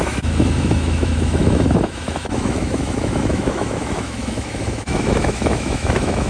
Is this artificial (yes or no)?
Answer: yes